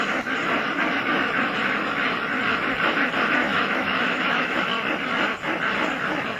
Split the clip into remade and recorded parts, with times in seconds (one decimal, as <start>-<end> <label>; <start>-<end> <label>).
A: 0.0-3.5 recorded; 3.5-4.6 remade; 4.6-6.4 recorded